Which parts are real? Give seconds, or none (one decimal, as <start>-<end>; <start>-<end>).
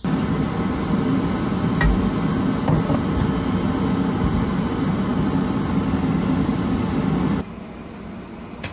0.0-8.7